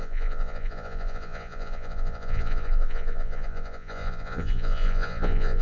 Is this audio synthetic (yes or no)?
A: yes